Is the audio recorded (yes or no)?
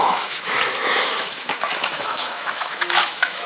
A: no